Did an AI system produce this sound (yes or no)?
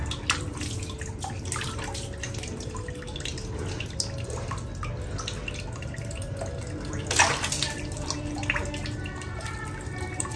no